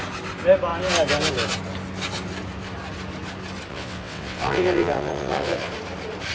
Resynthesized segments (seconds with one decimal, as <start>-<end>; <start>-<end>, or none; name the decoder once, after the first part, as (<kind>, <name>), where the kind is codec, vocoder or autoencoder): 3.7-5.7 (vocoder, WaveNeXt)